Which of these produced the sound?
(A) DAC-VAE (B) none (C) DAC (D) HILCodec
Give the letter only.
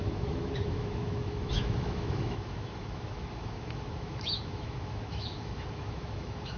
A